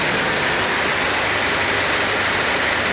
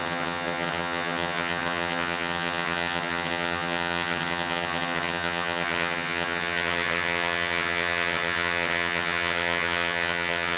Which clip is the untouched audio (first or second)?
first